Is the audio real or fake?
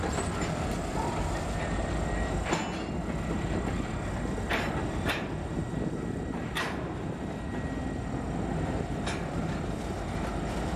real